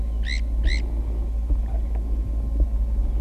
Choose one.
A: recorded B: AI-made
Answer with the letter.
A